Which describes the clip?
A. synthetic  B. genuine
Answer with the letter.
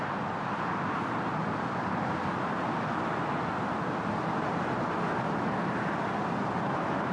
B